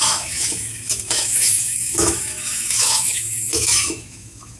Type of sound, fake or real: fake